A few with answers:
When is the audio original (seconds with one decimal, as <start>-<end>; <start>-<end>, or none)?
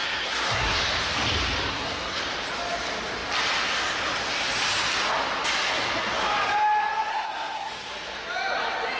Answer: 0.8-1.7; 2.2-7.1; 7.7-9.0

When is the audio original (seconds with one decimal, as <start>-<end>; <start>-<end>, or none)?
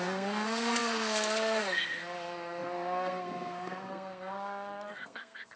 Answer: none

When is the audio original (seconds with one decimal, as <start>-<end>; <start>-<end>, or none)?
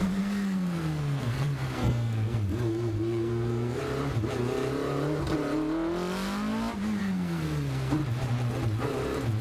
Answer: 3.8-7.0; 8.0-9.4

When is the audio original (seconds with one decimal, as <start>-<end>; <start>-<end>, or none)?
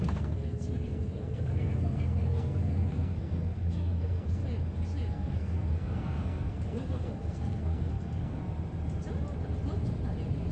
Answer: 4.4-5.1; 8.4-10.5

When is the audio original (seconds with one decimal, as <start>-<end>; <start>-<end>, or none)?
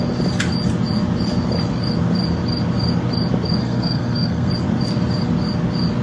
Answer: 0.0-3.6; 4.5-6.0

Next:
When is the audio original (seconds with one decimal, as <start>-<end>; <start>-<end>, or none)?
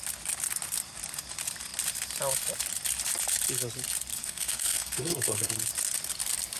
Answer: 0.0-4.1; 5.5-6.6